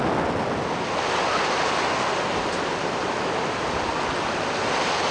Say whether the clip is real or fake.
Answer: real